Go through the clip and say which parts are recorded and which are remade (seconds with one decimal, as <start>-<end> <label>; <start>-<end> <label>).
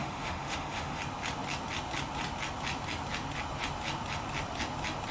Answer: 0.0-1.0 remade; 1.0-5.1 recorded